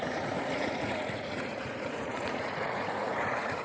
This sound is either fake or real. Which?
fake